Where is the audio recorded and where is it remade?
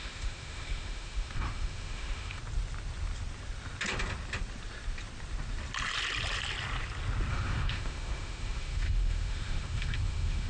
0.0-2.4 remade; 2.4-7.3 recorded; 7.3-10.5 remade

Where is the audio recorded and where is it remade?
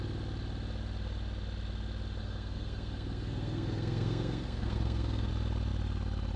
0.0-2.2 recorded; 2.2-5.3 remade; 5.3-6.4 recorded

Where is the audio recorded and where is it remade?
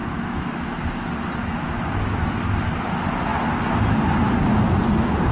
0.0-0.6 remade; 0.6-1.4 recorded; 1.4-2.4 remade; 2.4-5.3 recorded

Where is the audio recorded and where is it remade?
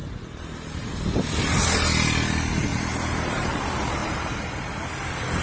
0.0-0.9 remade; 0.9-2.7 recorded; 2.7-3.6 remade; 3.6-4.0 recorded; 4.0-4.5 remade; 4.5-5.4 recorded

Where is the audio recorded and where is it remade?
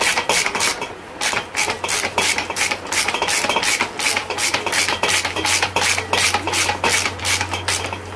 0.0-8.2 remade